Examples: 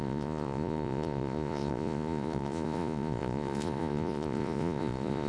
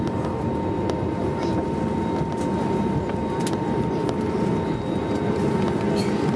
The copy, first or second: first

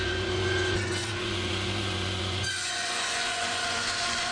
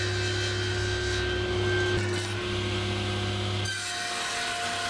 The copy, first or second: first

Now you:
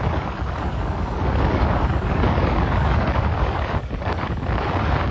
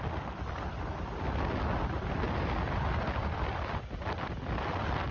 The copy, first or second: first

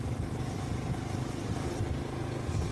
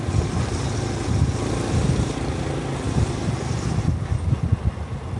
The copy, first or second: second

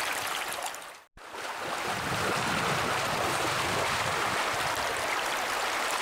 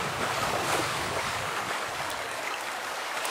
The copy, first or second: second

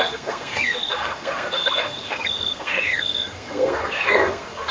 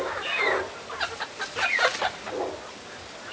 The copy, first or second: first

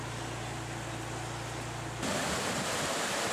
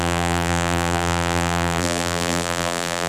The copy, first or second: second